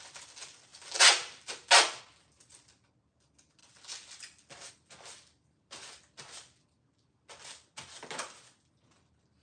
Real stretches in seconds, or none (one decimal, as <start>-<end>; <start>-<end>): 0.0-9.4